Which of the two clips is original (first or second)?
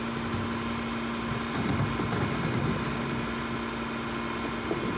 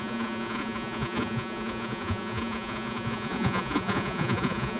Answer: first